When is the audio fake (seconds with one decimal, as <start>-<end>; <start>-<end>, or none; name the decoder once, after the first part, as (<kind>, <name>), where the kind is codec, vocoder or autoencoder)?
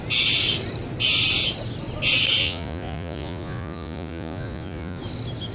2.4-5.0 (vocoder, Vocos)